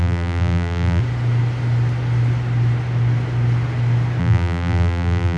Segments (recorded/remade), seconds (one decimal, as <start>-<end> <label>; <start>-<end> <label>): 0.0-1.0 remade; 1.0-4.2 recorded; 4.2-5.4 remade

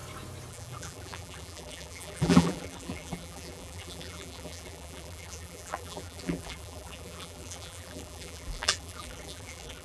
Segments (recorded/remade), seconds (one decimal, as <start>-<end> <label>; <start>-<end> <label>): 0.0-0.5 recorded; 0.5-9.8 remade

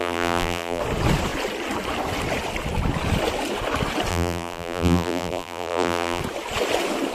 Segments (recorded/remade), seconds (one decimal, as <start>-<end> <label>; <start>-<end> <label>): 0.0-0.8 remade; 0.8-4.1 recorded; 4.1-6.2 remade; 6.2-7.1 recorded